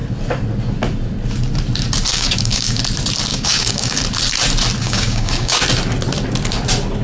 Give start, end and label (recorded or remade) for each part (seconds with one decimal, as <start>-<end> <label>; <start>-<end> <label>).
0.0-2.1 recorded; 2.1-2.8 remade; 2.8-3.3 recorded; 3.3-4.0 remade; 4.0-4.8 recorded; 4.8-5.6 remade; 5.6-7.0 recorded